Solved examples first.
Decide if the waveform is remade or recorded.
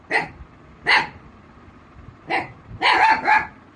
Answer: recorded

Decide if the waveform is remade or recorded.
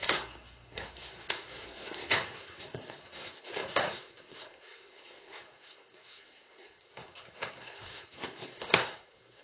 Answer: remade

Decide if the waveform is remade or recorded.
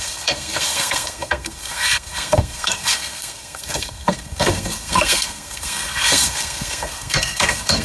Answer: remade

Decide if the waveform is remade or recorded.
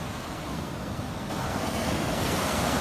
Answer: remade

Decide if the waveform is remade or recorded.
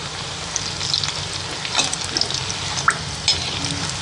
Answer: recorded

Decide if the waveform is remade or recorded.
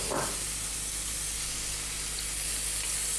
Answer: recorded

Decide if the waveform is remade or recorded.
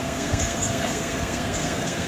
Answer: remade